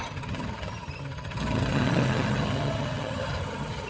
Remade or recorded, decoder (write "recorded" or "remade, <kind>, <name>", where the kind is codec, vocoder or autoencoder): remade, vocoder, HiFi-GAN